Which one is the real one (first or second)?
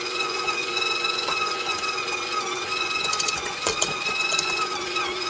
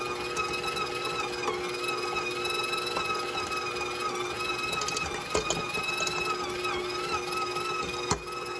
second